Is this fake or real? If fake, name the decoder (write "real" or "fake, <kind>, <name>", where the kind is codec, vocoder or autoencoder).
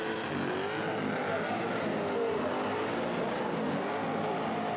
real